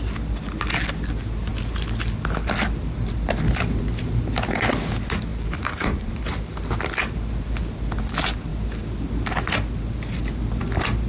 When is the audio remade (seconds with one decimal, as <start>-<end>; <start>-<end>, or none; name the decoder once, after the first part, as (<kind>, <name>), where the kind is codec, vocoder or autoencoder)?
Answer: 5.3-6.2 (vocoder, BigVGAN v2)